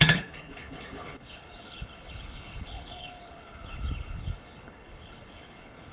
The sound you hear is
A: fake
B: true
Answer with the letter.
A